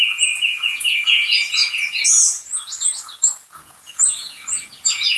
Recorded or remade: remade